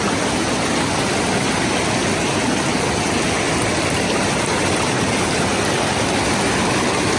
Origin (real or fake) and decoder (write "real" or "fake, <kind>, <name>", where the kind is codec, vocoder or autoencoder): real